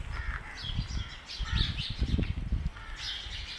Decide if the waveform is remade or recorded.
recorded